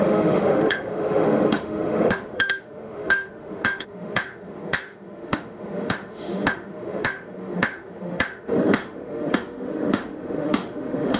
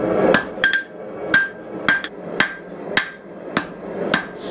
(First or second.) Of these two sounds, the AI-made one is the first